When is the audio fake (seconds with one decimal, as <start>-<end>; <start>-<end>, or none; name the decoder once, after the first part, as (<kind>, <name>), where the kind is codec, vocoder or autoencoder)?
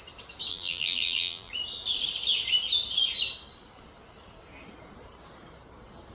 0.5-1.5 (vocoder, BigVGAN v2)